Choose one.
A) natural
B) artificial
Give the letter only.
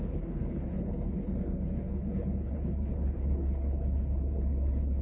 B